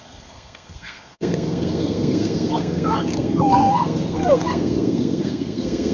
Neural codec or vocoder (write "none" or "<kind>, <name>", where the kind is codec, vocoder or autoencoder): codec, SNAC